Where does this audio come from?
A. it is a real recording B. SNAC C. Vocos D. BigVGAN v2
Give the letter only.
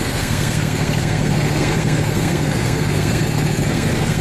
B